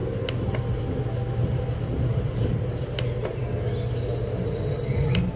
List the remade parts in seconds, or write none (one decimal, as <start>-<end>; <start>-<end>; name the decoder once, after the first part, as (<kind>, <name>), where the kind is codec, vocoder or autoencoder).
1.4-3.4 (vocoder, BigVGAN v2)